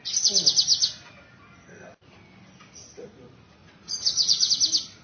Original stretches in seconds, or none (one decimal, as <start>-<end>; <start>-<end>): 0.0-3.6; 4.5-5.0